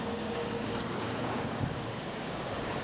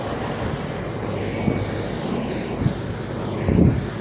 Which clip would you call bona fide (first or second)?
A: second